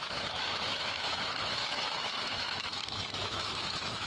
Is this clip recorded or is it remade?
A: remade